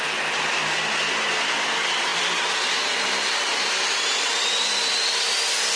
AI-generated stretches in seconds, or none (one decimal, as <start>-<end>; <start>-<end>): none